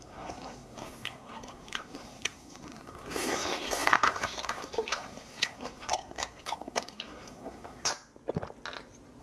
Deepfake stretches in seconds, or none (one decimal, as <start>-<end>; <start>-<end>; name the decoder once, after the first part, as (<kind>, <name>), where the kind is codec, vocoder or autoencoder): 0.0-7.9 (codec, SNAC)